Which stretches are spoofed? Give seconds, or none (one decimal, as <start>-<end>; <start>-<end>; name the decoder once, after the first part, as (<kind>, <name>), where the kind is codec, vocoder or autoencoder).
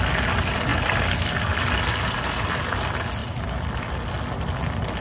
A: none